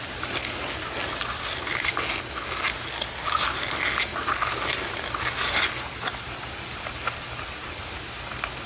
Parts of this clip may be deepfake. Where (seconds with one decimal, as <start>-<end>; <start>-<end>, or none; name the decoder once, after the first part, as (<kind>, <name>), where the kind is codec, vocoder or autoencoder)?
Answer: none